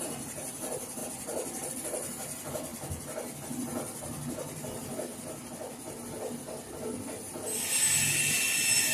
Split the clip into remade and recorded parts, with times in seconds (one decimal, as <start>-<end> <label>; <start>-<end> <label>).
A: 0.0-5.1 remade; 5.1-8.4 recorded; 8.4-8.9 remade